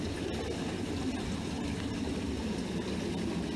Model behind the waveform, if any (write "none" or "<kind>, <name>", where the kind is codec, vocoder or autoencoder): none